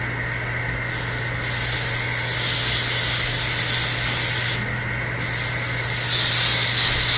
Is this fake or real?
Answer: real